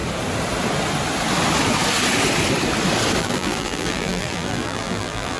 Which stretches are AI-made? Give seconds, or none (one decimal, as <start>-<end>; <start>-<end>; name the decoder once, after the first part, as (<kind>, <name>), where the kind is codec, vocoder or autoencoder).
3.2-5.4 (vocoder, BigVGAN v2)

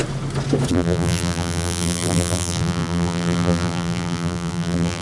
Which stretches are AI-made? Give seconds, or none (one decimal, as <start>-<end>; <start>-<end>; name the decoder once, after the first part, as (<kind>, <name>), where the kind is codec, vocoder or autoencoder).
0.7-5.0 (vocoder, BigVGAN v2)

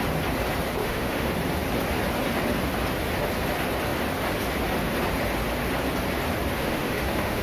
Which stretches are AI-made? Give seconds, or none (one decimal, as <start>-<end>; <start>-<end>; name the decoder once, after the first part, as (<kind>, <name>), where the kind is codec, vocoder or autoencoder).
0.8-1.3 (autoencoder, DAC-VAE); 6.6-7.4

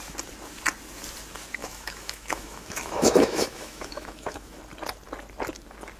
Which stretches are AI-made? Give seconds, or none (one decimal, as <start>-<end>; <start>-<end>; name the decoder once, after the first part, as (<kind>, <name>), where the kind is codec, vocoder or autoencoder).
1.6-4.6 (autoencoder, DAC-VAE)

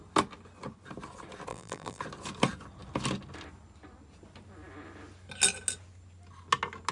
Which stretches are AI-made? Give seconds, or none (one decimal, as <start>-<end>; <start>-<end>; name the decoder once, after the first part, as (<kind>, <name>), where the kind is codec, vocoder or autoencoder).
1.5-2.0 (vocoder, BigVGAN v2)

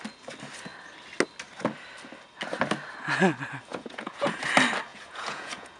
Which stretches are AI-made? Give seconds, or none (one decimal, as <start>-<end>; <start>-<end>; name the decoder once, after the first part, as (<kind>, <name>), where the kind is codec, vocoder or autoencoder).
3.7-4.4 (vocoder, Vocos); 4.9-5.8